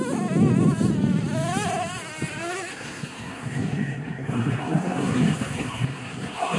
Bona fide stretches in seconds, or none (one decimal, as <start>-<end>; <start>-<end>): 0.0-2.7